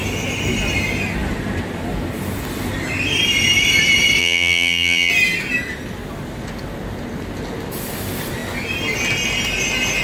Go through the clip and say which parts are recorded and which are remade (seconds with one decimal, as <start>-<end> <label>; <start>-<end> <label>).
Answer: 0.0-4.2 recorded; 4.2-5.1 remade; 5.1-10.0 recorded